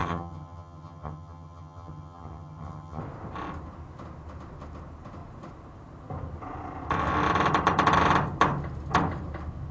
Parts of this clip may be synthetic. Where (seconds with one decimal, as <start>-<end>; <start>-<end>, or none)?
0.0-3.0